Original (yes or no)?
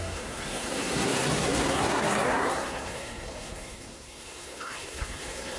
no